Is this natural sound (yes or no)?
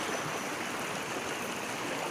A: yes